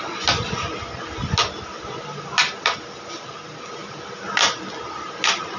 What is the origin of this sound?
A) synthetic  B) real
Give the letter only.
B